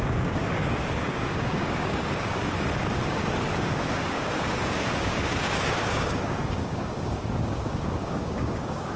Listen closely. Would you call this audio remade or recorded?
remade